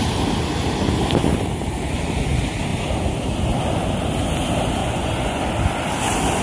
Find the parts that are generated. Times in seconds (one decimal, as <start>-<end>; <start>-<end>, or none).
4.8-5.4